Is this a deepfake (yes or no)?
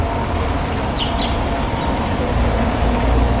no